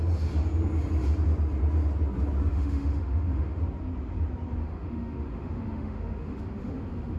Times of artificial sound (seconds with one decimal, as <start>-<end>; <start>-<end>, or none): 2.5-3.6; 4.6-7.2